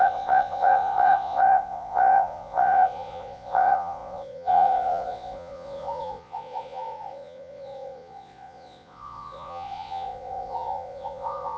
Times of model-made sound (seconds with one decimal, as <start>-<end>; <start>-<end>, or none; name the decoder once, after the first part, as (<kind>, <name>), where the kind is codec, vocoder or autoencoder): 0.0-11.6 (vocoder, Vocos)